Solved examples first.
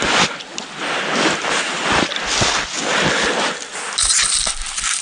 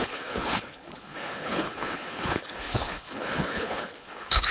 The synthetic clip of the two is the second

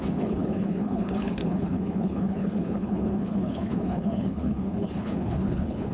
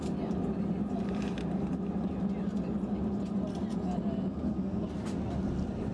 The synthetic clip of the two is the first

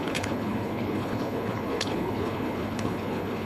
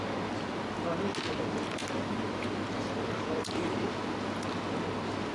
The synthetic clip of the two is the first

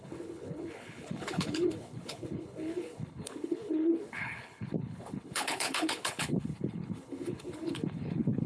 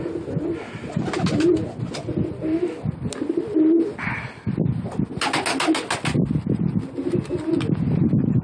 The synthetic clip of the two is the first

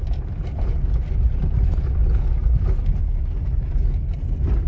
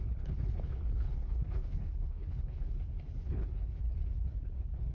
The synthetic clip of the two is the second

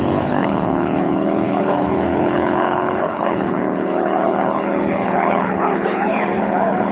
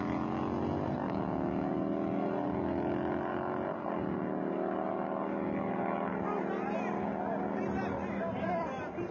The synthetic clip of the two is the first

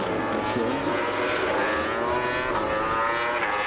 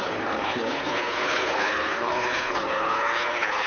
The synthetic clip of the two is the second